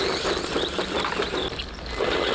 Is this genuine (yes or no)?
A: yes